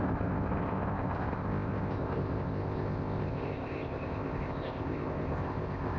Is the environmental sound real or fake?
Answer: fake